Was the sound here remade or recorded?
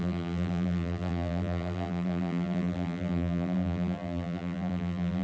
remade